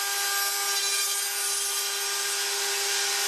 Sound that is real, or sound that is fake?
real